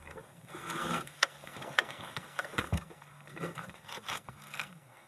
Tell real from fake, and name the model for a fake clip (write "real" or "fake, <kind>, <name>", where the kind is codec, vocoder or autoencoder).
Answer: fake, codec, SNAC